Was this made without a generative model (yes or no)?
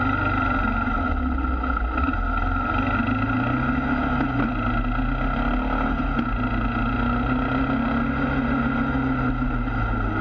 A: yes